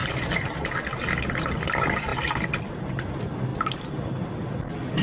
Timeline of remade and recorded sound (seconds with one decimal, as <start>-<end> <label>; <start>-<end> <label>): 0.0-5.0 recorded